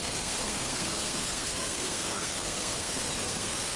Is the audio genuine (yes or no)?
no